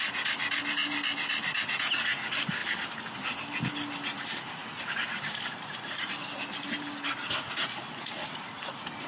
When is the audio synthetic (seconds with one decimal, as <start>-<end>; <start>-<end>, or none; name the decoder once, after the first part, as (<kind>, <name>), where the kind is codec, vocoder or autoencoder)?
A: none